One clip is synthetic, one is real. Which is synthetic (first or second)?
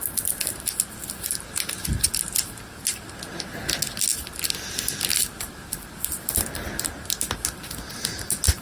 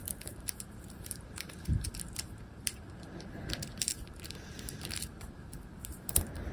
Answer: second